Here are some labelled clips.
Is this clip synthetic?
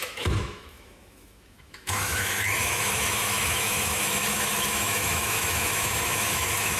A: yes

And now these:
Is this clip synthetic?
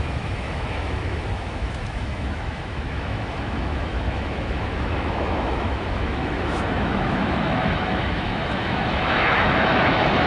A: yes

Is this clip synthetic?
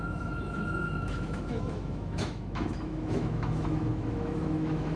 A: yes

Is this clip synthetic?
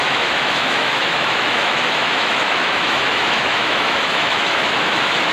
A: yes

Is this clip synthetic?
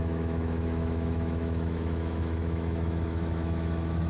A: yes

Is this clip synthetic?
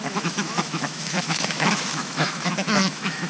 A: yes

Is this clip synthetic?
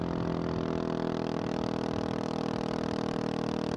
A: no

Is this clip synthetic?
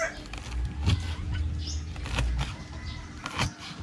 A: no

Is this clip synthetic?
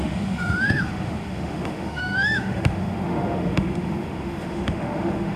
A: yes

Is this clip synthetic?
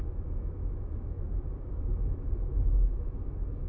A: yes